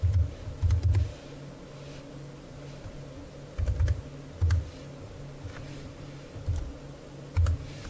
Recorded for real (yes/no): yes